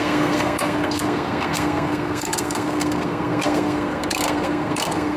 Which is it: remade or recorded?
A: remade